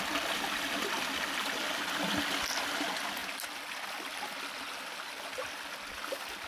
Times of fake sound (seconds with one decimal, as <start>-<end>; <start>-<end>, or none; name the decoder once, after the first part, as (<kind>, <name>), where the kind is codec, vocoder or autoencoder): none